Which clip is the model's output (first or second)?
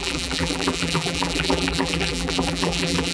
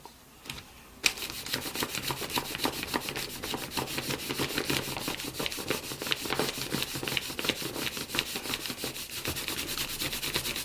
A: first